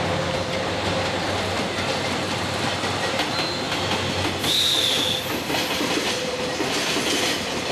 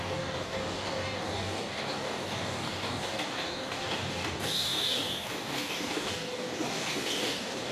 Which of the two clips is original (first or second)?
first